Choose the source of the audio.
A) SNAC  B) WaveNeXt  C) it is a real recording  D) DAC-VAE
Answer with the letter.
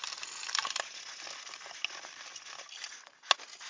C